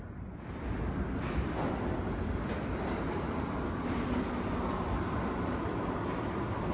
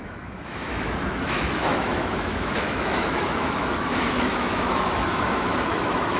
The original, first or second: first